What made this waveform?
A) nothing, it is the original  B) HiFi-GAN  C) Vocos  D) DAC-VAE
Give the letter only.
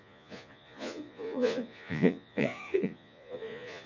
C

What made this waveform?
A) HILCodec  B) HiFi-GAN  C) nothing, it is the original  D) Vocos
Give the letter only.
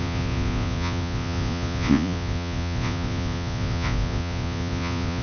D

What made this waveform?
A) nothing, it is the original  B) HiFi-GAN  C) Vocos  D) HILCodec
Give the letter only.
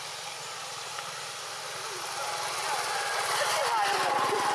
A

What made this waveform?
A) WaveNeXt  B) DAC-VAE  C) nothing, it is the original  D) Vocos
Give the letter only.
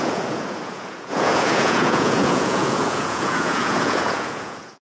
D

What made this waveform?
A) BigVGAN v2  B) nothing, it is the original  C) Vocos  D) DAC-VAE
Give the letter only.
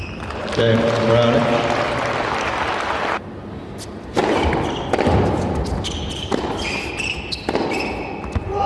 B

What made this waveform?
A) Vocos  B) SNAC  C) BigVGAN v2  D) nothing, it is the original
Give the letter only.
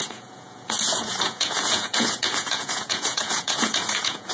A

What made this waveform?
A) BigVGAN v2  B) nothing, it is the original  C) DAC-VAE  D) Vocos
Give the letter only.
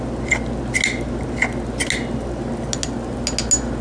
B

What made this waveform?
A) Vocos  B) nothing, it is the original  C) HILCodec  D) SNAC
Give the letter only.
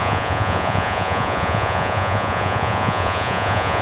A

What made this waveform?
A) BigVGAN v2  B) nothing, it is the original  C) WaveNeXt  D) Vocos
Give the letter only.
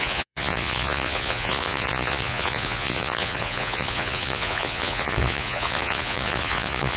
D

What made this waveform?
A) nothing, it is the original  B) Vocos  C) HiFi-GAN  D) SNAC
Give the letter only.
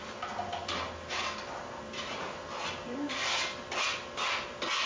A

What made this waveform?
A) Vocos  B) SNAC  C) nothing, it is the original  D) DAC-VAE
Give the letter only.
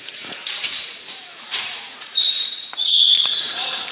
A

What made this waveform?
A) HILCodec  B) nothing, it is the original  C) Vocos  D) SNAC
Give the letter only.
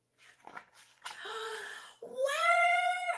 C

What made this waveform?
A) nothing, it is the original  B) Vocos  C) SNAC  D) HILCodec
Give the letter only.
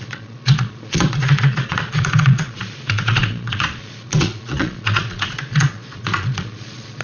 B